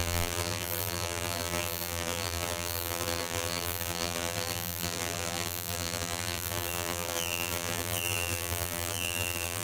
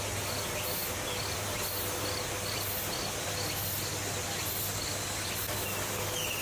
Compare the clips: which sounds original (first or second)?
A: second